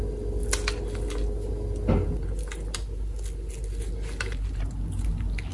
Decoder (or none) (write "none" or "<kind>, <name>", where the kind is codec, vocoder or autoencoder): none